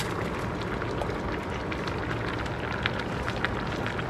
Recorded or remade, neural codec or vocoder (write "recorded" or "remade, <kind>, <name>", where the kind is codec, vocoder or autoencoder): recorded